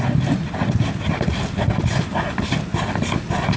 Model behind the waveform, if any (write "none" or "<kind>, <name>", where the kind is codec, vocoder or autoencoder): none